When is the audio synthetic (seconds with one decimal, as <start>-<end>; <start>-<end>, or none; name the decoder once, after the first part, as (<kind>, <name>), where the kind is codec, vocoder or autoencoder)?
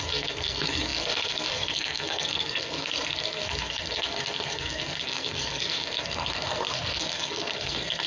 0.0-8.1 (codec, SNAC)